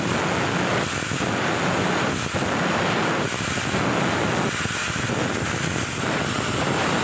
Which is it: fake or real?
real